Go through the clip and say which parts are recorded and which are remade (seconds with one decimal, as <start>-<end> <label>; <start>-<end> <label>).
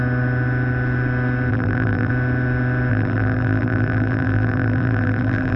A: 0.0-1.5 recorded; 1.5-2.1 remade; 2.1-2.9 recorded; 2.9-5.6 remade